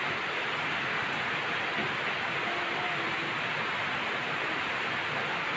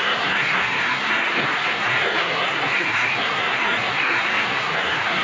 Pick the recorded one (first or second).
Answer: first